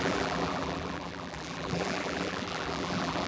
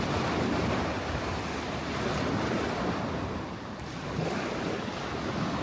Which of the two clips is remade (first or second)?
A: first